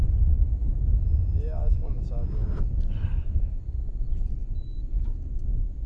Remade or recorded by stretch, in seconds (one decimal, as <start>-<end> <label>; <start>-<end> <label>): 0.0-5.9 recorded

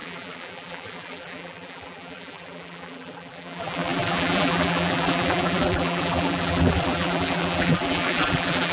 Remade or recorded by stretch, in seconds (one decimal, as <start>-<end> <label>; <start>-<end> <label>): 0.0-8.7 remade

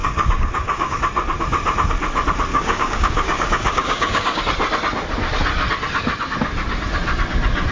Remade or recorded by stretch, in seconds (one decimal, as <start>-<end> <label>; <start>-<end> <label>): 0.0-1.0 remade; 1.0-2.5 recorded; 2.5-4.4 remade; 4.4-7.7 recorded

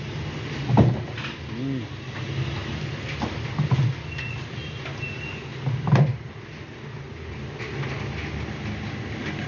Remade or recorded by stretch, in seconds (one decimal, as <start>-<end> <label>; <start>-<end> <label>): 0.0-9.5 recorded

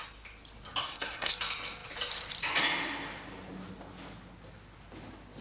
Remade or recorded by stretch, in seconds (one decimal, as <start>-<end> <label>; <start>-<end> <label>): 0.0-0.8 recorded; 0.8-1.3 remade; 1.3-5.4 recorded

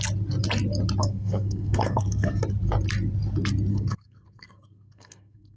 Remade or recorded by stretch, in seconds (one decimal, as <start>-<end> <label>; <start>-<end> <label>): 0.0-1.0 recorded; 1.0-2.4 remade; 2.4-3.7 recorded; 3.7-5.6 remade